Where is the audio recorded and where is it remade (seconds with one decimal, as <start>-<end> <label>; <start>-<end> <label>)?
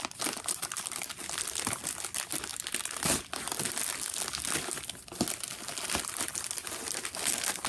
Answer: 0.0-7.7 recorded